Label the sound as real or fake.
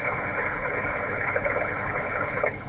fake